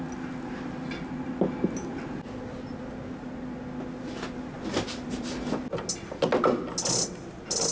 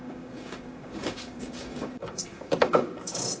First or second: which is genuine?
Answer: first